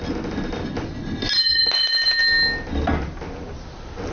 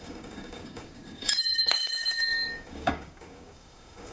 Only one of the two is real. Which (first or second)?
first